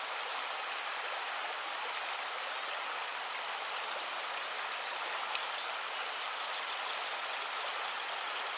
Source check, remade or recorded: recorded